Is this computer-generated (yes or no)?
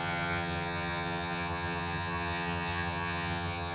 yes